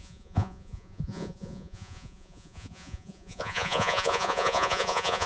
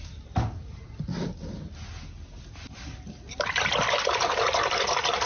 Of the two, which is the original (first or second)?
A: second